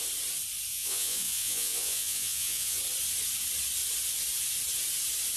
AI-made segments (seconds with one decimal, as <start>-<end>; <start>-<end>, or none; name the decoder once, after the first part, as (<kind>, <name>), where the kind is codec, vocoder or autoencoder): 0.7-2.8 (vocoder, Vocos)